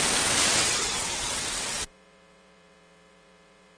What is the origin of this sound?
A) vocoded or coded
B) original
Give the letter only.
A